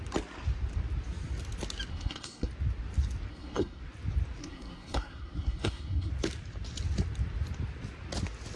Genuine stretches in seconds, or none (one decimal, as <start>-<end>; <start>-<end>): 0.0-1.9; 2.5-3.3; 3.8-4.4; 6.1-8.6